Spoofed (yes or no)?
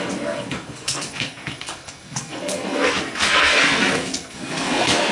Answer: yes